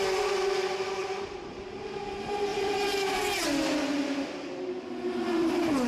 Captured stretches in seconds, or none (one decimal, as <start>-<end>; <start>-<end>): 0.0-1.0; 1.9-2.5; 3.4-5.9